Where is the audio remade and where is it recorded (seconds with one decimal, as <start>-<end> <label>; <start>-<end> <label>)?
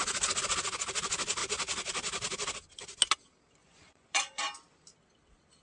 0.0-3.6 recorded; 3.6-4.5 remade; 4.5-5.6 recorded